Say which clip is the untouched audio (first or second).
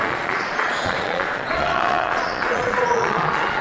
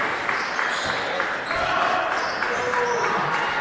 second